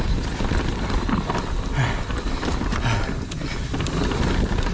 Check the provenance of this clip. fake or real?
real